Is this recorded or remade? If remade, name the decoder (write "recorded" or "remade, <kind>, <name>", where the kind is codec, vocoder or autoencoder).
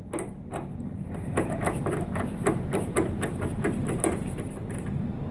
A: recorded